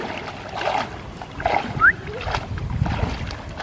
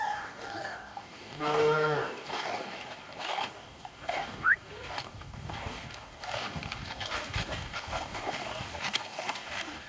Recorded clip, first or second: first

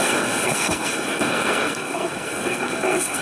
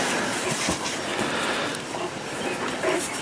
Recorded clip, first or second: second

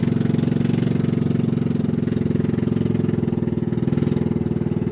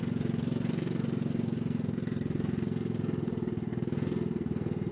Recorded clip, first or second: first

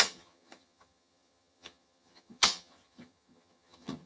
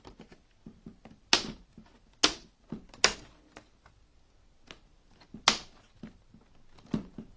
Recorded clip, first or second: second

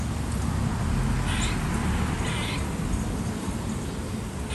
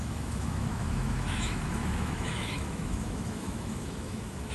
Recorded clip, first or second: first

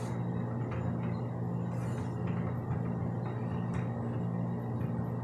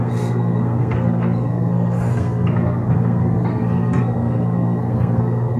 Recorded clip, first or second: first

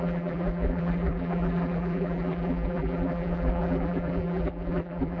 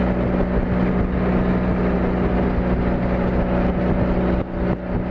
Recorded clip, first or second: second